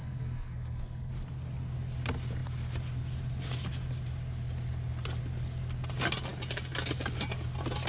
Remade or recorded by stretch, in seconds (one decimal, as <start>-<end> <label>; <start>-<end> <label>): 0.0-1.1 remade; 1.1-7.9 recorded